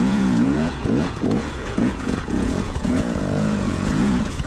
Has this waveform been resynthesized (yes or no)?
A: yes